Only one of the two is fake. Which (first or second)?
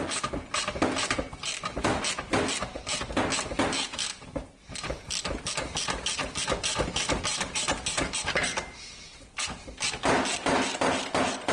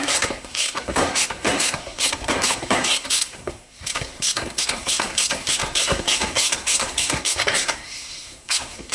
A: second